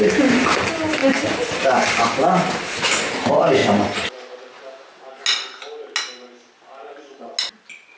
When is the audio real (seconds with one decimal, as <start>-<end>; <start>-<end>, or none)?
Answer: 0.0-8.0